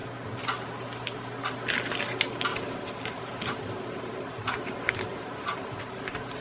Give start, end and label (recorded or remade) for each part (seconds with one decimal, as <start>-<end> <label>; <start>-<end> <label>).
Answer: 0.0-2.5 recorded; 2.5-5.8 remade; 5.8-6.4 recorded